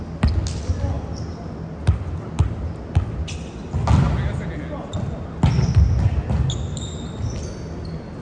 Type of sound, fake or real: real